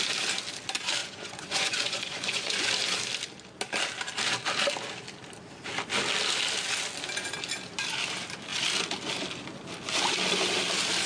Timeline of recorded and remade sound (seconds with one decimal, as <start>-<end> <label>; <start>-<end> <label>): 0.0-1.0 recorded; 1.0-2.7 remade; 2.7-11.1 recorded